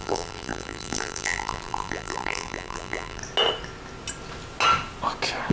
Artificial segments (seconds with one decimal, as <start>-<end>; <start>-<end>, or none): 0.0-3.2